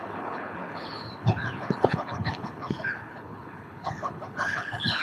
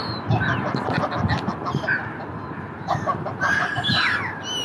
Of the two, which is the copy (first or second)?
first